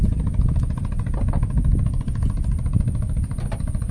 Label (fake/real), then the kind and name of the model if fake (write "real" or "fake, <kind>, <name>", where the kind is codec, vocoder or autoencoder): real